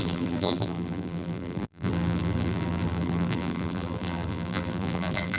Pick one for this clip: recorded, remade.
remade